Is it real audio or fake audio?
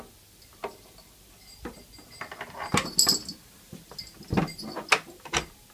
real